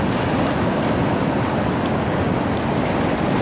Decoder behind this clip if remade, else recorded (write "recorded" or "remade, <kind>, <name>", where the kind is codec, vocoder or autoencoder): recorded